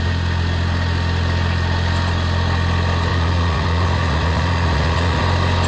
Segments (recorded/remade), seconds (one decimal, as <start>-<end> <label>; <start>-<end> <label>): 0.0-3.1 recorded; 3.1-5.2 remade; 5.2-5.7 recorded